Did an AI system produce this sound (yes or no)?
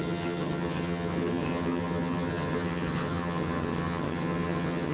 yes